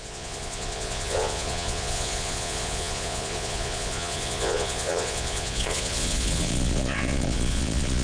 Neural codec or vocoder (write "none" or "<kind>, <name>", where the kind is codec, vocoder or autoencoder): vocoder, Vocos